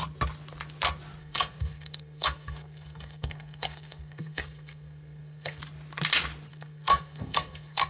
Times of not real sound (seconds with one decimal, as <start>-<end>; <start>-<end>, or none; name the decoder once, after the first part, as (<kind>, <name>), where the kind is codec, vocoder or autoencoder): 1.2-5.6 (codec, SNAC); 6.5-7.9